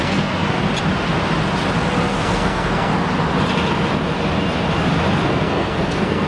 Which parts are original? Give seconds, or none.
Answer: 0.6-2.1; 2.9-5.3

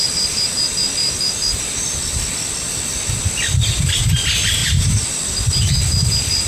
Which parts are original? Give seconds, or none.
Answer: 0.0-6.5